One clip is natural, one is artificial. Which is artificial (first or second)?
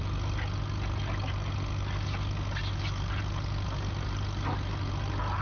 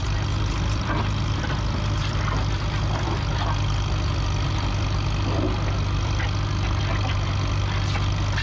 second